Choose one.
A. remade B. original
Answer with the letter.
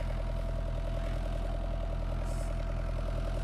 B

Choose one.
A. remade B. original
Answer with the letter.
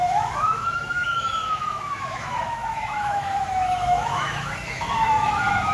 A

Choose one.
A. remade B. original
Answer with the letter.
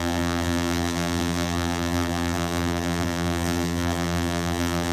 A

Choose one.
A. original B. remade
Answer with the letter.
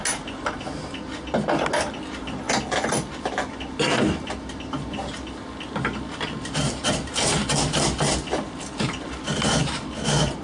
A